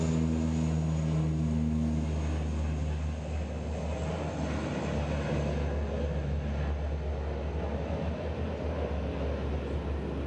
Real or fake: real